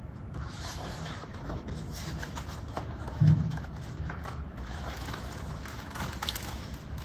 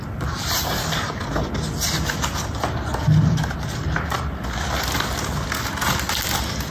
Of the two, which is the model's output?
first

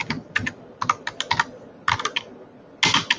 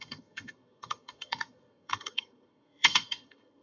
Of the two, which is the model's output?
second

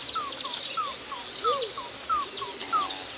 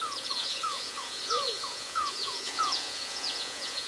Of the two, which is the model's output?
second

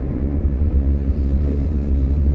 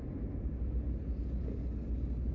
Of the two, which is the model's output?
first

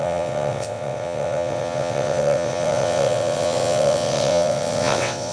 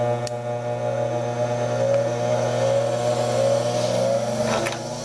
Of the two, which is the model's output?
first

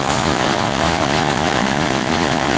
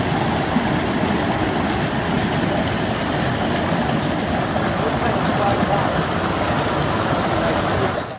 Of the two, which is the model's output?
first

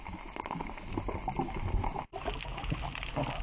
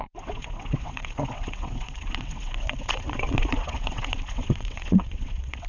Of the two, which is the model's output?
second